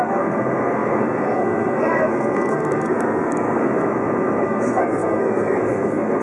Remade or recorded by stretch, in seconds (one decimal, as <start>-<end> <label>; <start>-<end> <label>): 0.0-3.7 remade; 3.7-4.4 recorded; 4.4-6.2 remade